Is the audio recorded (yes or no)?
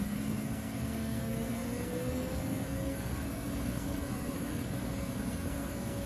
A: no